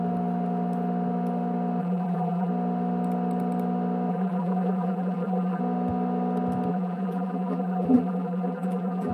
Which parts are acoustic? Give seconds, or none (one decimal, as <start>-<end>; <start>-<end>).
0.0-1.8; 2.5-4.1; 5.6-6.7